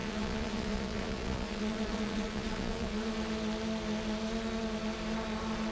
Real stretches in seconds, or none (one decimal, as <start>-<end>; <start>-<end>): 3.1-5.7